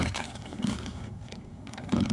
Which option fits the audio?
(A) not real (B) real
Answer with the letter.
A